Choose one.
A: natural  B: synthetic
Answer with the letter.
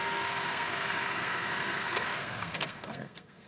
B